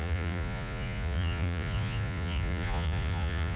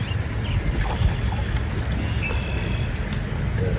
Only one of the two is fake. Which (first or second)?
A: first